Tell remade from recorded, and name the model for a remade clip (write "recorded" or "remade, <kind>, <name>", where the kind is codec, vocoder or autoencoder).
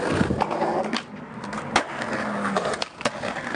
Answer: remade, codec, DAC